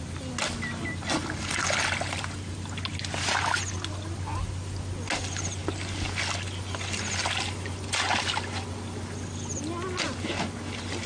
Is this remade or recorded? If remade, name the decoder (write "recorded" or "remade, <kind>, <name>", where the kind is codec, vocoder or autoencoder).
recorded